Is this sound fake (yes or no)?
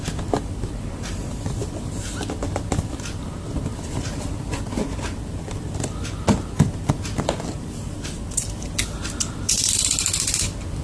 yes